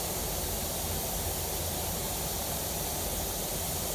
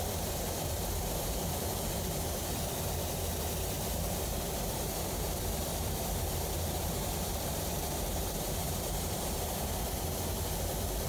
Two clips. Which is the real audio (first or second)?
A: first